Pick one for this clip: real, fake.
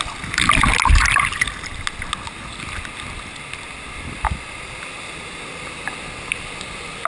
real